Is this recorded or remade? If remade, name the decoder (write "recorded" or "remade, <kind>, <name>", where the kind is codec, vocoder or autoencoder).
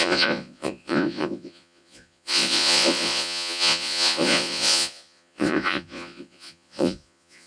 remade, vocoder, Vocos